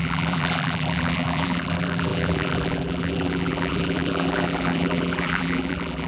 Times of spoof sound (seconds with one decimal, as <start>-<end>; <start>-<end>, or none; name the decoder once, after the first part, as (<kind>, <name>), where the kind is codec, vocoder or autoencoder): 0.0-6.1 (vocoder, BigVGAN v2)

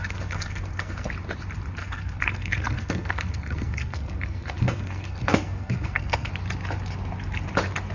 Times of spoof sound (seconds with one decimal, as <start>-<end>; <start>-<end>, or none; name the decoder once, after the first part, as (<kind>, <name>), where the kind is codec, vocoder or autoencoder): 0.0-1.1 (codec, SNAC); 1.8-6.3

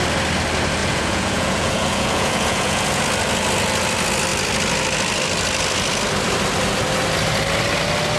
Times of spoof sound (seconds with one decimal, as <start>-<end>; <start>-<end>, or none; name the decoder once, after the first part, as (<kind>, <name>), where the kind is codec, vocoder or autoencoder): 0.8-3.0 (vocoder, Vocos)

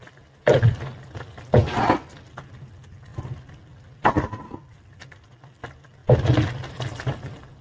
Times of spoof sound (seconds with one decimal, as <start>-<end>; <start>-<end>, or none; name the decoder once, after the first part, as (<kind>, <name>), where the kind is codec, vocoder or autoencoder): 0.0-1.6 (vocoder, BigVGAN v2); 2.5-3.1; 4.6-6.0; 6.7-7.6

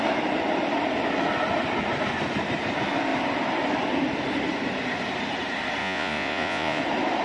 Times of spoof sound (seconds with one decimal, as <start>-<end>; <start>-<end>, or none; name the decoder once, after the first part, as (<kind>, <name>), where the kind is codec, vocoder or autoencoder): 5.8-6.8 (vocoder, Vocos)

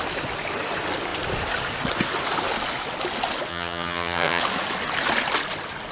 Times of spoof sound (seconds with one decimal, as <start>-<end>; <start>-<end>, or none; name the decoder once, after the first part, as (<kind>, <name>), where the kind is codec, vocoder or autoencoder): 3.5-4.4 (vocoder, HiFi-GAN)